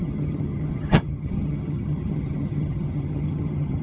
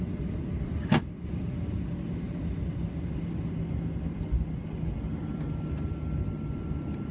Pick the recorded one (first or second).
second